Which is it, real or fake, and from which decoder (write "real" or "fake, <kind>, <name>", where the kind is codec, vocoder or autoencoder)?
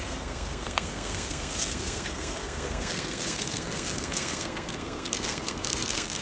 fake, codec, SNAC